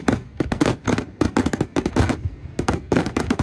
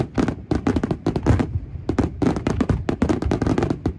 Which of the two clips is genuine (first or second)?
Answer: second